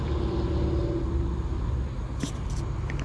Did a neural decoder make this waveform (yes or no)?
no